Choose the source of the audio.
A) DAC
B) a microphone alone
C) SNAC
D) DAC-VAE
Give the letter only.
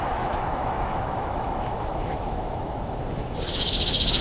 D